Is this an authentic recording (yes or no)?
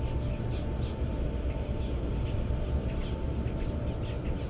yes